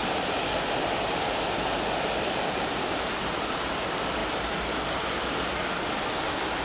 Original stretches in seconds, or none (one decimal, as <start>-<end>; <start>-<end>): 0.0-2.5; 4.2-6.6